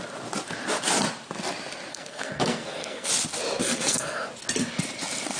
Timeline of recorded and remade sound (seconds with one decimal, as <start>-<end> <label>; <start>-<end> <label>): 0.0-1.9 recorded; 1.9-3.1 remade; 3.1-3.6 recorded; 3.6-4.3 remade; 4.3-5.4 recorded